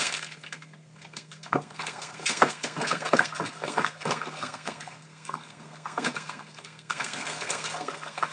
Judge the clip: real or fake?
fake